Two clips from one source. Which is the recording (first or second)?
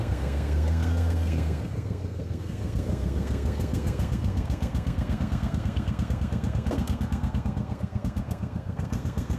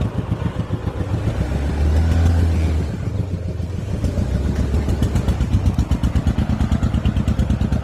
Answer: second